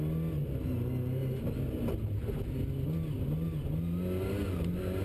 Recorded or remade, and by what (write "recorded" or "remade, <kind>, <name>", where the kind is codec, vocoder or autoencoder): recorded